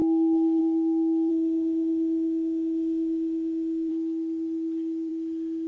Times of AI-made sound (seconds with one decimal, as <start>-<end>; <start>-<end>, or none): 1.3-3.9